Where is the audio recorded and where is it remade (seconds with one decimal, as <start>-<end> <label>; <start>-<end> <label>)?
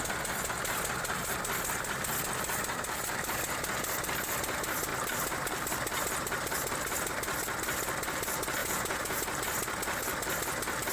0.0-8.6 recorded; 8.6-9.2 remade; 9.2-10.9 recorded